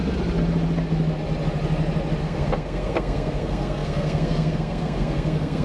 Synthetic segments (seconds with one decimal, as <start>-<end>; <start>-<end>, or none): 2.2-5.6